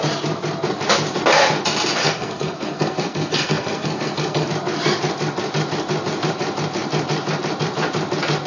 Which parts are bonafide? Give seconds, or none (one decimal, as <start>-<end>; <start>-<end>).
0.0-2.0; 4.5-8.5